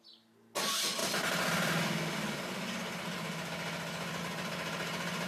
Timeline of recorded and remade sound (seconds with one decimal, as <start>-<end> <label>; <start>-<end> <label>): 0.0-5.3 recorded

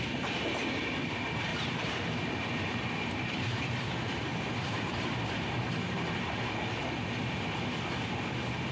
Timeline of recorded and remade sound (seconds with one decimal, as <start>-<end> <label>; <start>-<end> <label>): 0.0-1.5 recorded; 1.5-6.5 remade; 6.5-8.7 recorded

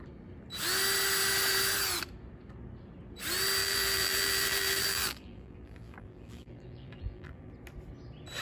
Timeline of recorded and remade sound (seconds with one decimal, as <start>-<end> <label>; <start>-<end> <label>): 0.0-3.6 recorded; 3.6-7.5 remade; 7.5-8.4 recorded

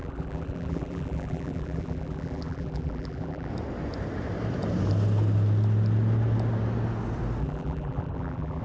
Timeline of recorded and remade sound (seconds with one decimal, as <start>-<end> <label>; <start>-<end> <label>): 0.0-3.5 remade; 3.5-7.4 recorded; 7.4-8.6 remade

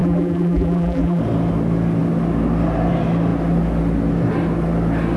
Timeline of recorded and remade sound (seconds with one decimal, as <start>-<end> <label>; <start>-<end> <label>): 0.0-1.2 remade; 1.2-5.2 recorded

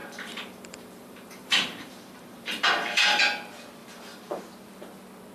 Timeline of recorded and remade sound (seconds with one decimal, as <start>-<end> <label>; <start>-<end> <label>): 0.0-3.2 remade; 3.2-3.8 recorded; 3.8-4.4 remade; 4.4-5.3 recorded